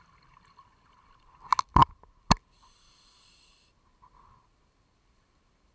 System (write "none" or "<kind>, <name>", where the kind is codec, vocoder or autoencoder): none